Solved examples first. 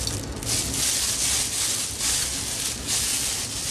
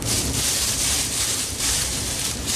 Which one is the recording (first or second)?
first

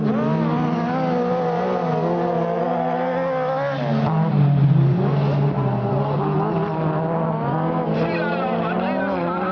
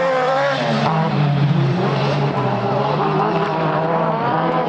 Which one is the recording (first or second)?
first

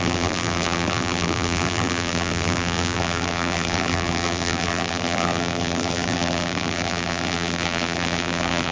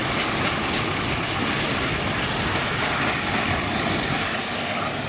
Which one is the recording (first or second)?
second